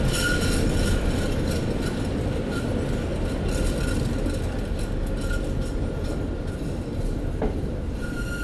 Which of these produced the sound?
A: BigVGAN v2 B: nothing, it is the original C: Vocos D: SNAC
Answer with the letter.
B